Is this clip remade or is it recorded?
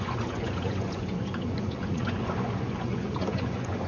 remade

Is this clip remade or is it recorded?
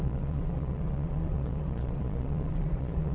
remade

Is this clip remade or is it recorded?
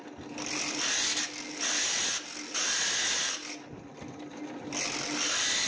recorded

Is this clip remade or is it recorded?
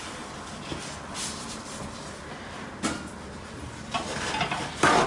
recorded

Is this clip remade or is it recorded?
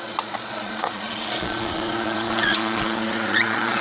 remade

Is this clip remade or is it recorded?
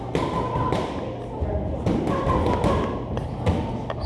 recorded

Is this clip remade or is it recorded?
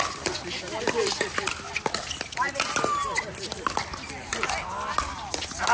recorded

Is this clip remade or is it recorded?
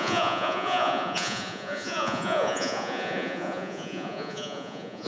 remade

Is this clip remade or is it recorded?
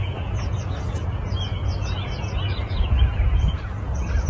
remade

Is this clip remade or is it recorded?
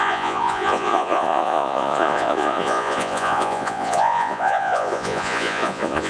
remade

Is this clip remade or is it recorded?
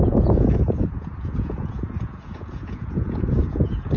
remade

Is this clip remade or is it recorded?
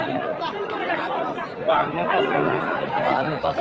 remade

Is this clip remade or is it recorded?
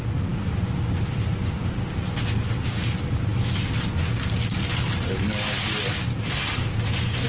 recorded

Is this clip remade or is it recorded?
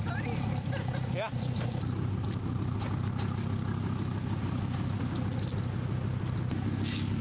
recorded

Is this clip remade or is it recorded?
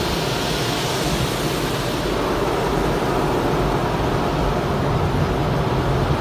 recorded